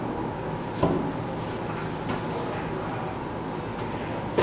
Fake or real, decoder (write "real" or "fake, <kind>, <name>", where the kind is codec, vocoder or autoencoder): real